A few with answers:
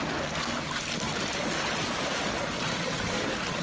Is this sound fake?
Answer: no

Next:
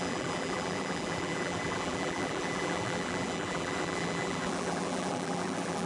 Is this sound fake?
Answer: yes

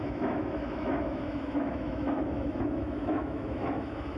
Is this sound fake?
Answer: yes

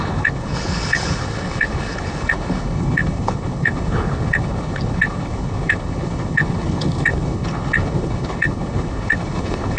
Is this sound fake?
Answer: yes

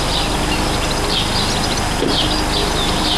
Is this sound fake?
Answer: no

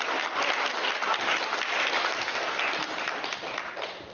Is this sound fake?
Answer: no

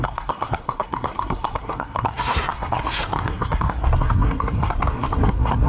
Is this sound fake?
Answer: yes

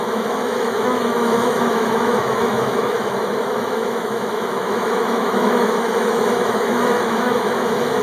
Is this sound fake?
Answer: yes